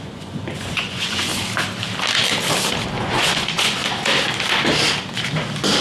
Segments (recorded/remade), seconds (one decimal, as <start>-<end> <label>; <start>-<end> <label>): 0.0-1.3 remade; 1.3-3.0 recorded; 3.0-3.8 remade; 3.8-5.8 recorded